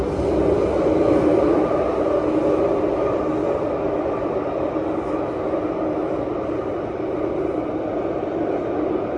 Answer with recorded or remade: recorded